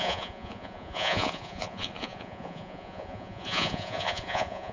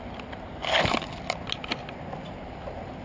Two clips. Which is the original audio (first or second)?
second